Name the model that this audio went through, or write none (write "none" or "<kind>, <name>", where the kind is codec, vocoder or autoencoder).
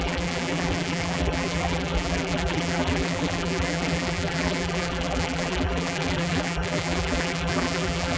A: vocoder, BigVGAN v2